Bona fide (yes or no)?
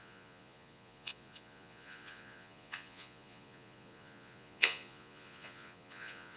no